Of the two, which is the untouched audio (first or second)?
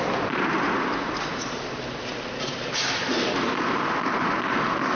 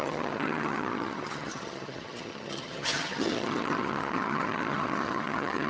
first